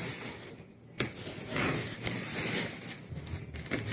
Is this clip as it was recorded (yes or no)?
yes